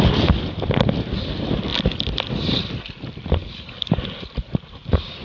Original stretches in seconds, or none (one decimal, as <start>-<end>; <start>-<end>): 0.0-3.4; 4.0-5.2